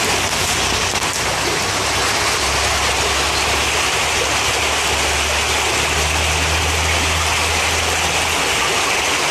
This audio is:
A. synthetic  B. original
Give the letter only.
B